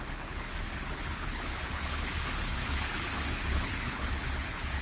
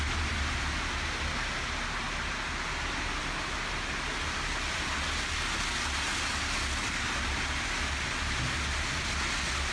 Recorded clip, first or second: second